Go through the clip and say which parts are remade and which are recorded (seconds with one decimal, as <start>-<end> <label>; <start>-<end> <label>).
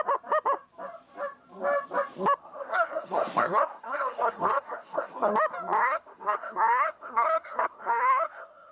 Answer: 0.0-2.4 recorded; 2.4-5.3 remade; 5.3-5.8 recorded; 5.8-8.7 remade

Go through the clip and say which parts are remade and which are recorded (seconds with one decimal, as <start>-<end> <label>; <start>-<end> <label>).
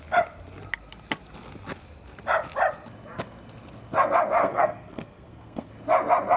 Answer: 0.0-4.4 recorded; 4.4-5.7 remade; 5.7-6.4 recorded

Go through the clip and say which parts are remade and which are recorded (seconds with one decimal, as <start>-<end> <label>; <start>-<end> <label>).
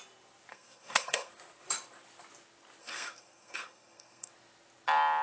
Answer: 0.0-0.5 recorded; 0.5-1.3 remade; 1.3-2.8 recorded; 2.8-4.3 remade; 4.3-5.2 recorded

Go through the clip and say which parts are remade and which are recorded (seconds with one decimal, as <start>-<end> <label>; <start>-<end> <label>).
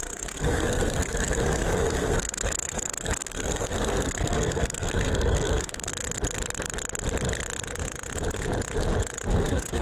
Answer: 0.0-5.9 remade; 5.9-9.3 recorded; 9.3-9.8 remade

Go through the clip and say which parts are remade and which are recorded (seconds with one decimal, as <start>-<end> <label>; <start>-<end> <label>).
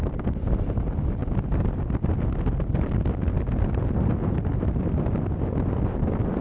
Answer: 0.0-6.4 recorded